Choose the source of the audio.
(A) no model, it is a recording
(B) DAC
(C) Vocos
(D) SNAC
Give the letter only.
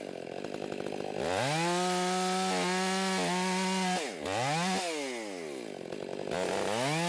A